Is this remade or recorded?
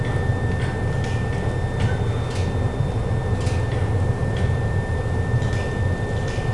recorded